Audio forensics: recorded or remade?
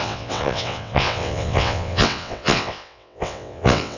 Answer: remade